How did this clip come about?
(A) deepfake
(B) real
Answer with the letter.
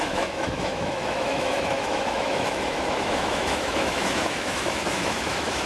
A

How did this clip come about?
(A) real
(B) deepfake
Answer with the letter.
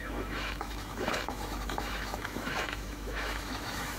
B